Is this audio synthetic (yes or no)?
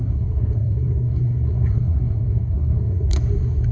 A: yes